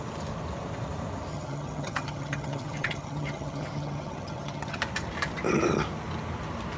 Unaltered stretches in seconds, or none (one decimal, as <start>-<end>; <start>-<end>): 0.0-1.3; 4.8-6.8